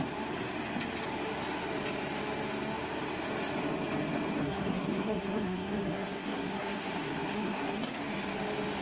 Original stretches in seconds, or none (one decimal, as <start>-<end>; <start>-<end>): 0.0-4.4; 8.0-8.8